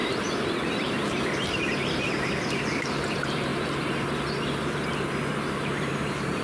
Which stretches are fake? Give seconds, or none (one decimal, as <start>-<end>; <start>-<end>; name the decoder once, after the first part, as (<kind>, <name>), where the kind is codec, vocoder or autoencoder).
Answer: 0.0-3.5 (vocoder, BigVGAN v2); 5.5-6.4